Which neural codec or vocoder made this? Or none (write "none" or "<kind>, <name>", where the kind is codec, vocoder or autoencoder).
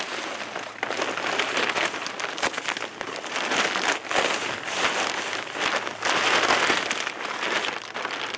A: none